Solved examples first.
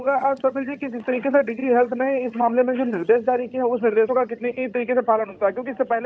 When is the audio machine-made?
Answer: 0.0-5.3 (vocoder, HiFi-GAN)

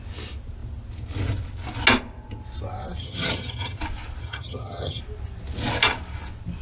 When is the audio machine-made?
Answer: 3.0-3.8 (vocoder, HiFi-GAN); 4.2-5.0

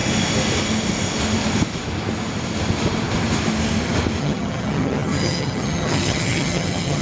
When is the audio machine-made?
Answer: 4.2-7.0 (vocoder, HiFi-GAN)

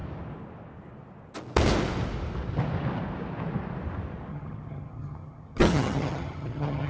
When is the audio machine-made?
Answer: 4.3-6.9 (vocoder, HiFi-GAN)

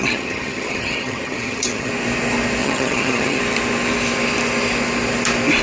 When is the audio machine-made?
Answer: 0.0-1.9 (vocoder, HiFi-GAN); 2.6-3.4